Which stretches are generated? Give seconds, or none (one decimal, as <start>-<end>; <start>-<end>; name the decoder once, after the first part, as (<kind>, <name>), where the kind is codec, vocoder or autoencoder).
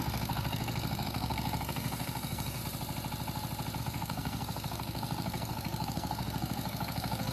0.0-2.6 (codec, SNAC); 3.8-7.3